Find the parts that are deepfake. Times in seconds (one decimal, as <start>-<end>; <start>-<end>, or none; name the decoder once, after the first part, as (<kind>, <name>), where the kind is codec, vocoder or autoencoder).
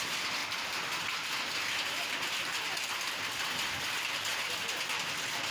none